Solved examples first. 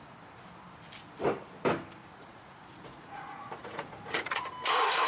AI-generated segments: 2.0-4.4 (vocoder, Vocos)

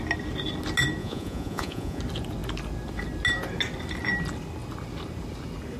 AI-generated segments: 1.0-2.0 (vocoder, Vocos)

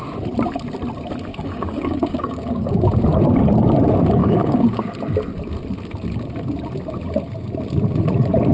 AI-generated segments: 1.3-2.8 (codec, DAC); 4.2-4.8

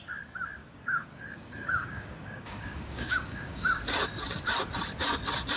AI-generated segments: 0.6-3.8 (codec, DAC)

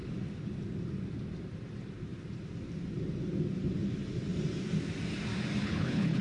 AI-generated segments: 5.6-6.2 (codec, HILCodec)

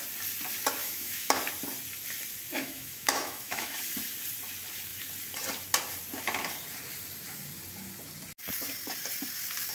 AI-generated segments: 0.8-1.4 (autoencoder, DAC-VAE); 2.5-3.8

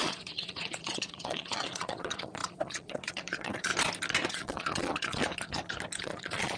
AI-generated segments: 0.0-3.7 (vocoder, Vocos); 4.3-5.2; 6.0-6.6

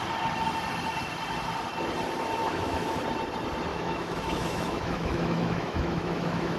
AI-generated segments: 2.4-3.0 (autoencoder, DAC-VAE); 3.7-6.6